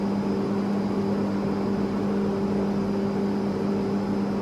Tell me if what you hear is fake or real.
real